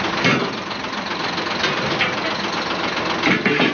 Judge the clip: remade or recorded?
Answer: recorded